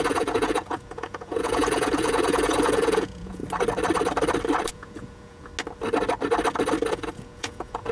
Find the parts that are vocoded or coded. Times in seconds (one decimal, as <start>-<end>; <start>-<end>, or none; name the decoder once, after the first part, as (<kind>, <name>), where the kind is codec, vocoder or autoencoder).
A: 0.0-3.4 (vocoder, Vocos); 4.7-5.5; 6.9-7.9